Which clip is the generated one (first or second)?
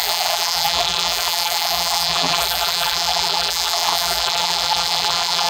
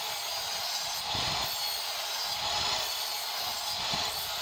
first